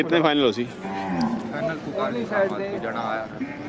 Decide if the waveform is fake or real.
real